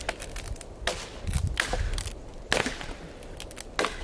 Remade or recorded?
recorded